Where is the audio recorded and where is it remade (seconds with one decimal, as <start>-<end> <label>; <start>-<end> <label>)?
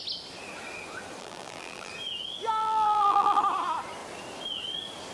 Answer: 0.0-1.2 recorded; 1.2-1.9 remade; 1.9-2.6 recorded; 2.6-3.4 remade; 3.4-5.1 recorded